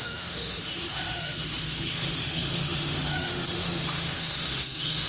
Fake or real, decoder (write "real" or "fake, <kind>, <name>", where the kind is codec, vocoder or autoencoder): fake, autoencoder, DAC-VAE